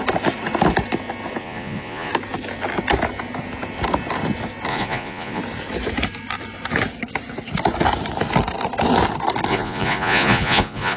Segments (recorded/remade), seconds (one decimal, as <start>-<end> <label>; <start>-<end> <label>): 0.0-1.4 recorded; 1.4-2.1 remade; 2.1-4.7 recorded; 4.7-5.4 remade; 5.4-9.5 recorded; 9.5-11.0 remade